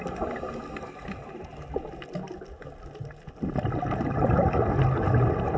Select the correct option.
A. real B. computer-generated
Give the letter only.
A